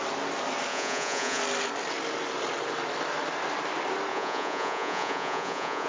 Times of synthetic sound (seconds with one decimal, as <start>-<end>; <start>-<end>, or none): 0.7-1.4; 4.1-5.9